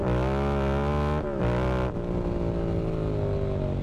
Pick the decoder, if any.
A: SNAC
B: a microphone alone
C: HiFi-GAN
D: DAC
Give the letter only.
B